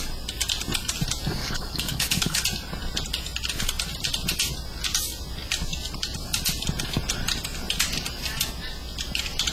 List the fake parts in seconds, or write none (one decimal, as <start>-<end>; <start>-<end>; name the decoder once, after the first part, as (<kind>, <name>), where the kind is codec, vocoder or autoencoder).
1.4-2.4 (codec, DAC)